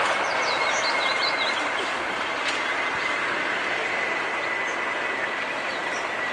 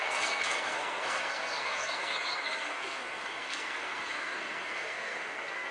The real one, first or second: first